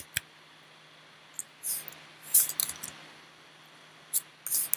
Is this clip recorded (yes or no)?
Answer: yes